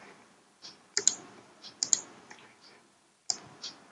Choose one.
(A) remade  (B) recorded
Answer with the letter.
B